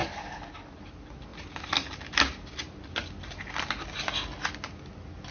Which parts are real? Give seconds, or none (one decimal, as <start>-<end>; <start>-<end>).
0.7-5.3